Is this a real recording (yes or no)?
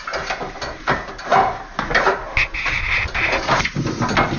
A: yes